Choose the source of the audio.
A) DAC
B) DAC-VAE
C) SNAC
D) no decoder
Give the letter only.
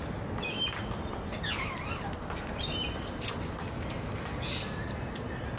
D